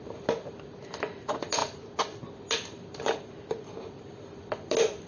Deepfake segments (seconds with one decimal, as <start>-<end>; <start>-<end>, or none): none